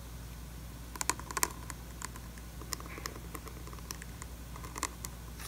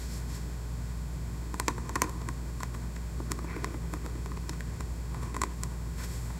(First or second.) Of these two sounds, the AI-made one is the second